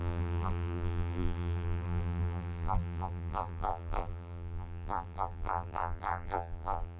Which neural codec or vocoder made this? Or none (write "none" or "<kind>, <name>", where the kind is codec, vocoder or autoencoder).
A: vocoder, BigVGAN v2